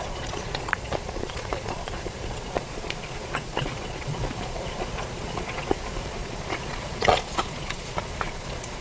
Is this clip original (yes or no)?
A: no